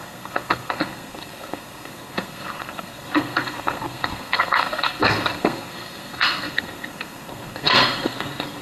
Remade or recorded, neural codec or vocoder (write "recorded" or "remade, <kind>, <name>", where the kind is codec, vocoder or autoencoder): remade, codec, SNAC